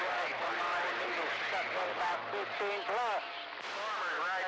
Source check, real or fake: real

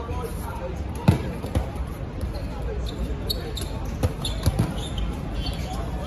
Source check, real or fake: real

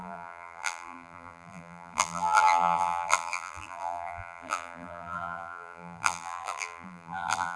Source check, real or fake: fake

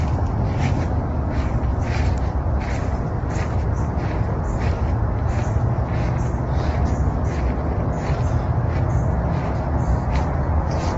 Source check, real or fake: real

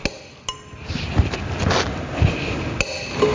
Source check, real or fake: real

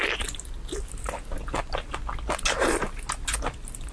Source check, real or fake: real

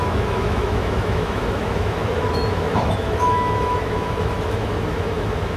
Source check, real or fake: fake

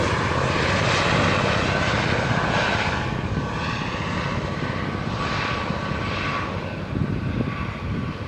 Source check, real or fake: real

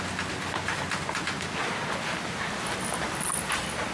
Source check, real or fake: real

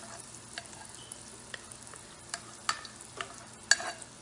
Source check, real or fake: real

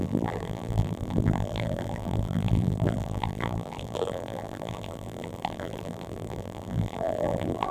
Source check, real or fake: fake